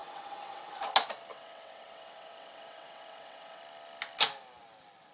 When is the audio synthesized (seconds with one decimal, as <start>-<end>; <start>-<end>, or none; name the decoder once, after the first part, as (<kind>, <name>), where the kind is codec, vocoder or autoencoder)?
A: 0.0-0.7 (vocoder, WaveNeXt); 1.3-3.6